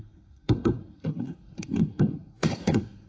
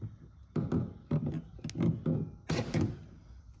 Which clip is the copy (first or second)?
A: first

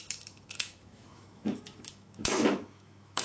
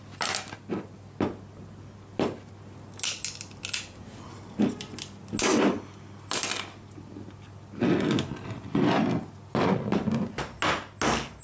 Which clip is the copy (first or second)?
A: first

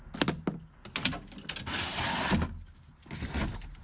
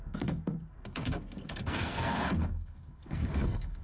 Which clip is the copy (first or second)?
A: second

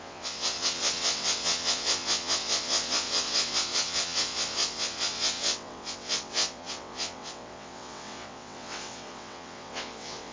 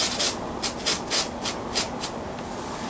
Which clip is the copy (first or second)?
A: first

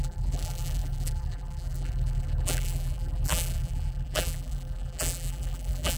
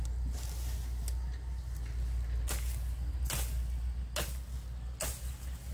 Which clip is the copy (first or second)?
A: first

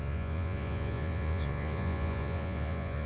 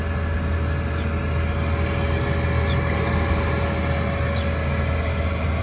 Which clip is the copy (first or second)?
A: first